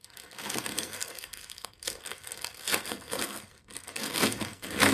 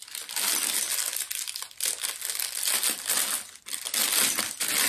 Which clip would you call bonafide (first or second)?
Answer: second